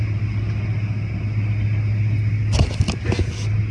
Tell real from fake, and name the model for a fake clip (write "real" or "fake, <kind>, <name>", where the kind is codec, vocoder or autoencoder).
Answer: real